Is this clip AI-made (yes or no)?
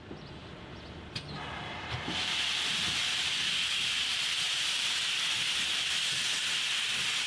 no